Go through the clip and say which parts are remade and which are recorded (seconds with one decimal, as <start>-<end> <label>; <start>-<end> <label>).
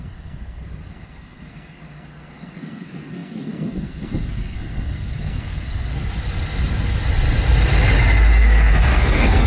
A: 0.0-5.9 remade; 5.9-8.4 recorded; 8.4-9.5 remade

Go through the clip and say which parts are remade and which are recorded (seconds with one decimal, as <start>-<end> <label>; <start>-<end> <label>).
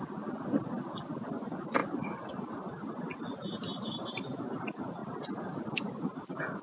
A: 0.0-6.6 recorded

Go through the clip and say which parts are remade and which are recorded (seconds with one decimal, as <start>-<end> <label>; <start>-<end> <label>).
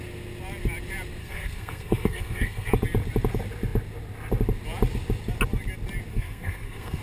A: 0.0-1.2 recorded; 1.2-2.7 remade; 2.7-6.1 recorded; 6.1-7.0 remade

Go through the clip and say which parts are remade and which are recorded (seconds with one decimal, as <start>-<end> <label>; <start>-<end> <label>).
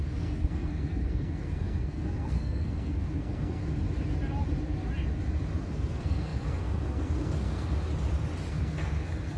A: 0.0-3.6 remade; 3.6-5.6 recorded; 5.6-7.9 remade; 7.9-8.5 recorded; 8.5-9.4 remade